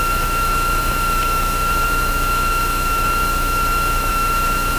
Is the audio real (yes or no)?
no